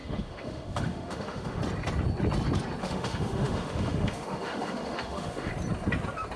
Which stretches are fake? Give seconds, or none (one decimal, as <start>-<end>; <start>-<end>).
0.0-1.6; 2.8-5.5